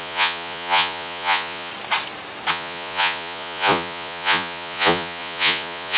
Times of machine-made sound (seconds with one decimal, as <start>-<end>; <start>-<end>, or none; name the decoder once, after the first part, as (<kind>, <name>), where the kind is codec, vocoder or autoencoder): 0.0-1.7 (vocoder, Vocos); 2.5-6.0